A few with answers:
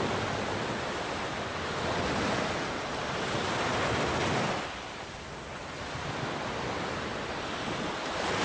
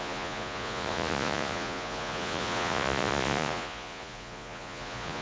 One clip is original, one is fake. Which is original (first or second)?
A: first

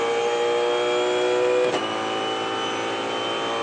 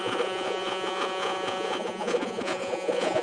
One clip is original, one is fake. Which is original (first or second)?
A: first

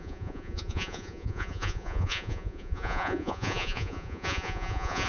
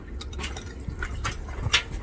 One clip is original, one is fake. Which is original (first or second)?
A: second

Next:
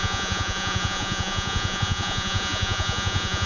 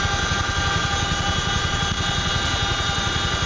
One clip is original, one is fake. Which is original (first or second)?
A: second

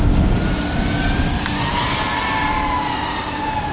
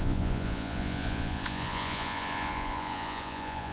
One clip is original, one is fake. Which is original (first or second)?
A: first